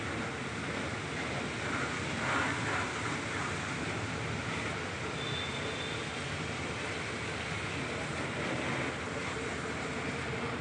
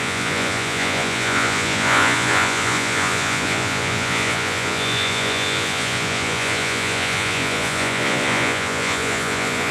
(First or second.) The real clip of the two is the first